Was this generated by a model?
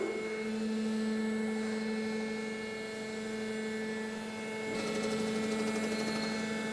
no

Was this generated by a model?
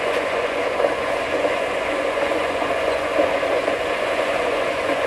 yes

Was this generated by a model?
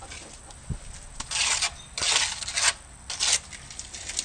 no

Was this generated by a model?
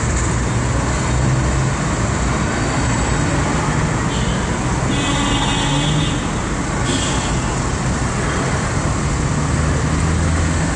no